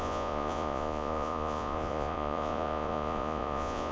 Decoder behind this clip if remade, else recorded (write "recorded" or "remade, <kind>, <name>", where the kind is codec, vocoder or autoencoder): remade, vocoder, Vocos